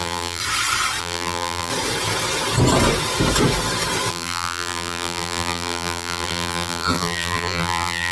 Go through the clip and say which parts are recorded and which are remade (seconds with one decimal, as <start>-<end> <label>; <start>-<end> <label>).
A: 0.0-0.4 remade; 0.4-1.0 recorded; 1.0-1.7 remade; 1.7-4.1 recorded; 4.1-8.1 remade